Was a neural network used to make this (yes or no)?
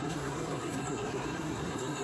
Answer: yes